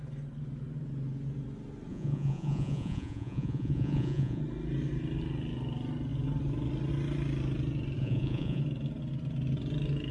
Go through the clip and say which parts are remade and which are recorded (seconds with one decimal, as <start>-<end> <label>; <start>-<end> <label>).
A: 0.0-1.9 recorded; 1.9-4.4 remade; 4.4-8.0 recorded; 8.0-8.6 remade; 8.6-10.1 recorded